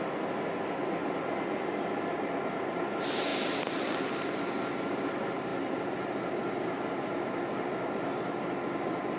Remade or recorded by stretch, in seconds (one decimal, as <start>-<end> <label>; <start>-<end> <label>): 0.0-9.2 recorded